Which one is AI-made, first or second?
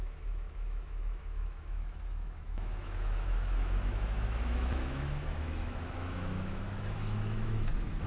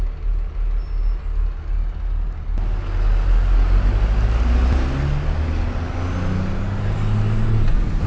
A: first